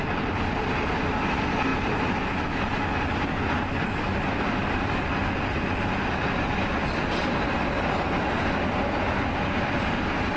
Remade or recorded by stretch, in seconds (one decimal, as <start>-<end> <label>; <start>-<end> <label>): 0.0-7.2 recorded; 7.2-8.2 remade; 8.2-10.4 recorded